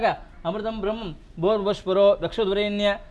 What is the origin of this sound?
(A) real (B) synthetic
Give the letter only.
A